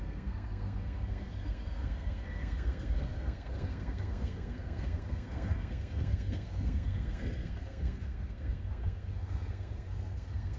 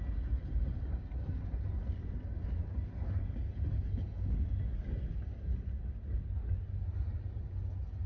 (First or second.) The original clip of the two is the second